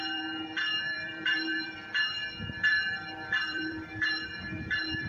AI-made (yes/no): yes